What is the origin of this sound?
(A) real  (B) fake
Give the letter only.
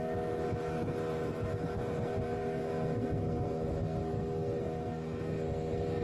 B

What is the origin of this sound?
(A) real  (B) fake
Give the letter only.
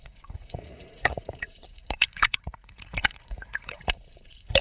B